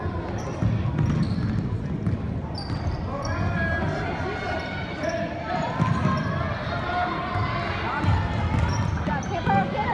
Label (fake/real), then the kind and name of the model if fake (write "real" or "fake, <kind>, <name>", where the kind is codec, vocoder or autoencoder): real